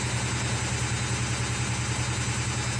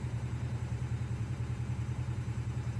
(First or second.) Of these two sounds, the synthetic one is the second